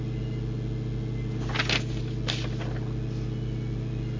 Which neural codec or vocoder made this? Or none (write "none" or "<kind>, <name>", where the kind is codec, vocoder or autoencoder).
none